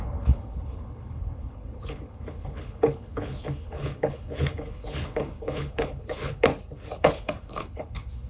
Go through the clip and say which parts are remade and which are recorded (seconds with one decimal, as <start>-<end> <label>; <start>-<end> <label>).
0.0-6.5 remade; 6.5-7.0 recorded; 7.0-8.3 remade